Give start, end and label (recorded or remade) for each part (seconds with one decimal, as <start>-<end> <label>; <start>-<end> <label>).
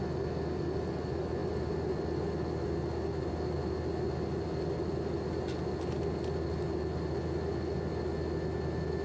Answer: 0.0-9.0 recorded